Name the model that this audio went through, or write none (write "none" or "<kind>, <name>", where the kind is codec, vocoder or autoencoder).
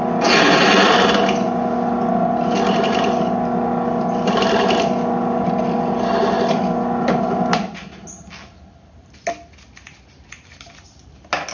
none